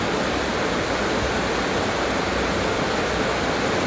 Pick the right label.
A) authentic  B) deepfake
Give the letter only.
A